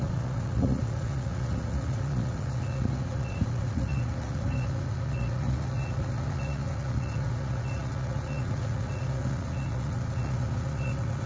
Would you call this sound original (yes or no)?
no